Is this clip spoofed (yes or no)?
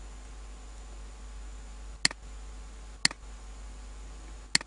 no